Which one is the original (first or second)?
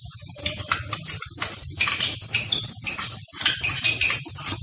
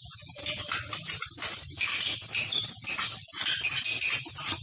second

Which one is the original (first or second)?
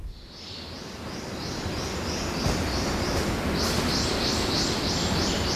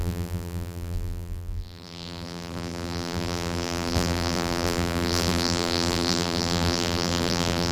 first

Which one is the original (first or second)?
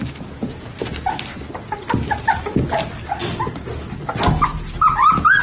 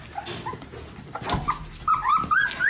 first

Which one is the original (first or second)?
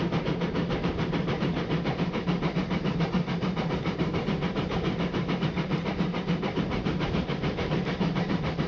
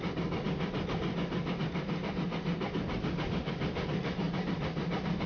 second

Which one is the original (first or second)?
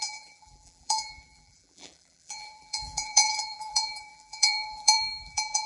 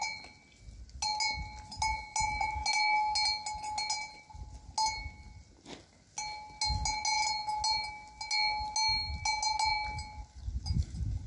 second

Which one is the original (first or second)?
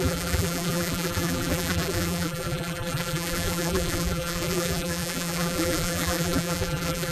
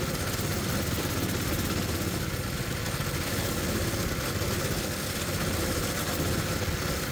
second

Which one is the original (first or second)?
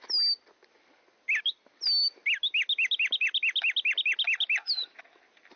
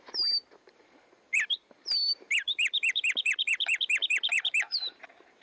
first